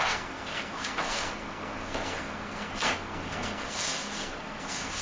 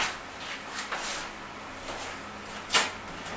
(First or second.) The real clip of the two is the second